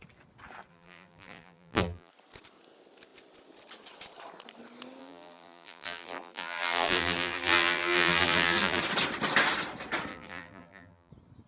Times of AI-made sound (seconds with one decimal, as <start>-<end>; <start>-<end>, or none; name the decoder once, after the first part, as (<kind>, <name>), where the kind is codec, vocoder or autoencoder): 0.7-2.1 (vocoder, BigVGAN v2); 5.0-8.8; 10.1-11.1